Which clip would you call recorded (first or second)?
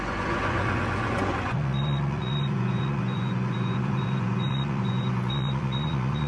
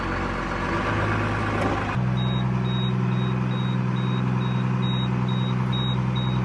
second